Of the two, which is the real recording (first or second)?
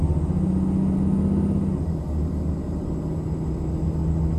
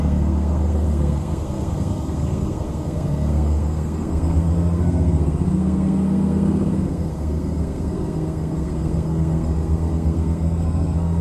first